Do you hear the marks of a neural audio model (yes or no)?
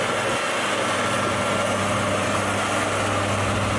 no